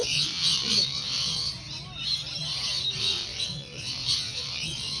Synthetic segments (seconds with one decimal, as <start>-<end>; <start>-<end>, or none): 0.0-1.5; 3.0-5.0